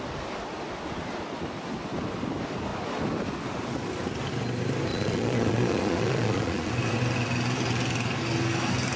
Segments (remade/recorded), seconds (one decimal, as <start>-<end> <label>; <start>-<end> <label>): 0.0-4.9 recorded; 4.9-6.7 remade; 6.7-9.0 recorded